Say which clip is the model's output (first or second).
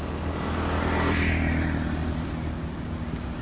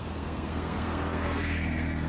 second